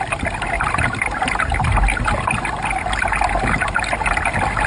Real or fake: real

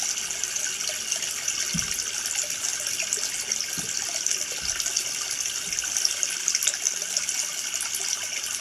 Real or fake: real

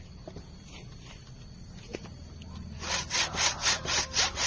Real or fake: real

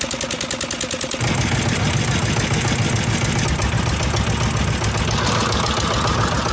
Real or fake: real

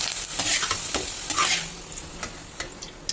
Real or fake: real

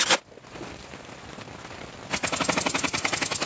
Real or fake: real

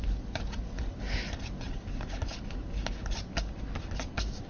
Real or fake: real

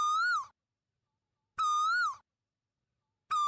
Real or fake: real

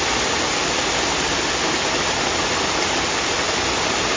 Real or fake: real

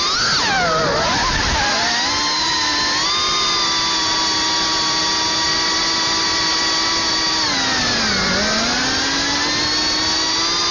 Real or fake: real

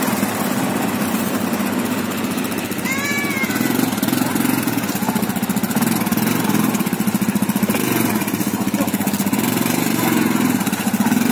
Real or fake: real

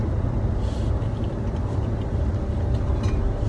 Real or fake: real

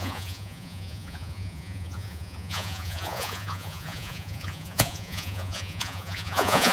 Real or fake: fake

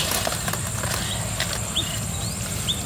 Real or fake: real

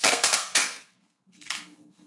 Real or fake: fake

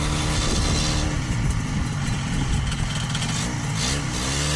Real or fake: real